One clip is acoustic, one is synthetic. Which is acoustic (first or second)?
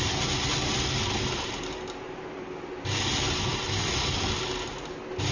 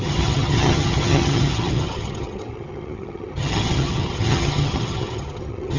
first